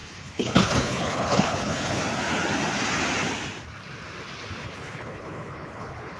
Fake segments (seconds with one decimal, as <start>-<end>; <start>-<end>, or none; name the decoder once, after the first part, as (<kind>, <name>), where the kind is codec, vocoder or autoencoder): 0.0-2.0 (codec, HILCodec); 4.6-6.2